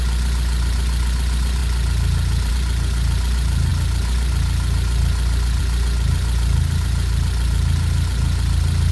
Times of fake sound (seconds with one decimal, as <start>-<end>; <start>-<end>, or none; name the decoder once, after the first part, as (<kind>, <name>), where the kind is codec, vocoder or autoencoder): none